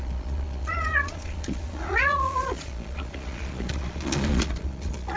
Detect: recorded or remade remade